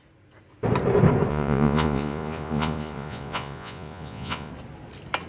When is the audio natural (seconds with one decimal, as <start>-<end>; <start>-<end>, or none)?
0.0-1.3; 4.5-5.3